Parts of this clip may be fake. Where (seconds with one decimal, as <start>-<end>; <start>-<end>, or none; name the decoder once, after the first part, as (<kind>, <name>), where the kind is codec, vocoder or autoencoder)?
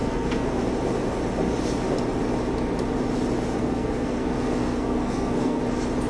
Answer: 0.0-0.7 (codec, SNAC); 3.6-5.6